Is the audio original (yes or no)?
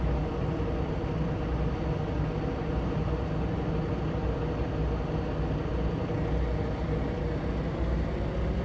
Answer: yes